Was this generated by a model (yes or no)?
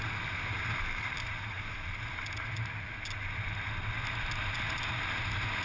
no